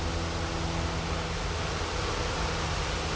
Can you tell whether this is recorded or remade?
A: recorded